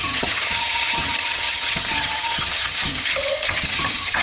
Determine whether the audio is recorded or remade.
remade